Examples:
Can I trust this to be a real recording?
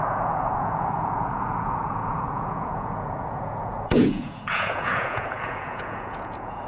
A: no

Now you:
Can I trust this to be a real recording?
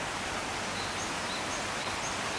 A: yes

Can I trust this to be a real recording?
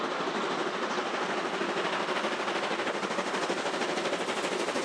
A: yes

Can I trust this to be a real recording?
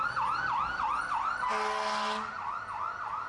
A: yes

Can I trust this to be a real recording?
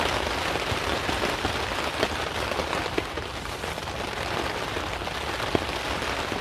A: yes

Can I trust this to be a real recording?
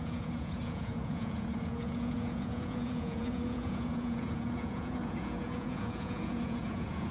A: no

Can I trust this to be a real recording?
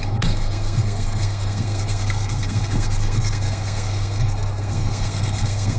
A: no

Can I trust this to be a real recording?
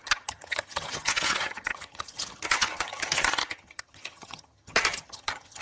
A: no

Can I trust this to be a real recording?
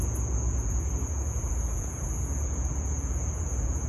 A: no